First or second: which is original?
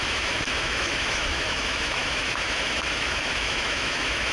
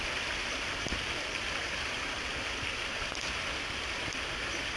second